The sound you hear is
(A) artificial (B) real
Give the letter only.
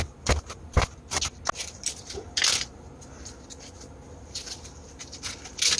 B